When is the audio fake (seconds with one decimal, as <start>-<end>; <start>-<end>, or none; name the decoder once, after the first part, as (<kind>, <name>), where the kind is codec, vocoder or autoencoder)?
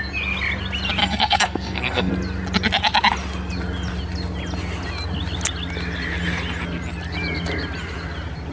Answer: 1.0-2.1 (codec, SNAC)